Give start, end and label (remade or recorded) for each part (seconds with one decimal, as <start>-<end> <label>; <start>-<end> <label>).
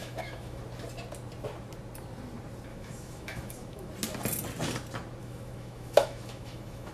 0.0-0.6 remade; 0.6-2.7 recorded; 2.7-3.9 remade; 3.9-5.2 recorded; 5.2-6.9 remade